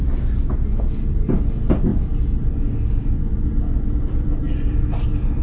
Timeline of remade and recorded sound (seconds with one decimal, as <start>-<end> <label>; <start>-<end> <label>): 0.0-5.4 recorded